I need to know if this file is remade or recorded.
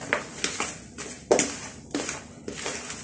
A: recorded